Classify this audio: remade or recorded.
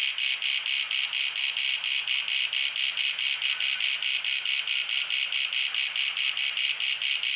recorded